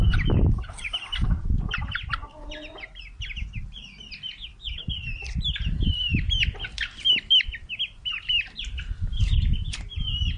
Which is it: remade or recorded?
recorded